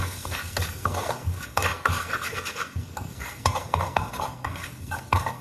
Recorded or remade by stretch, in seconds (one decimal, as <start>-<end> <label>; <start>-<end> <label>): 0.0-5.4 remade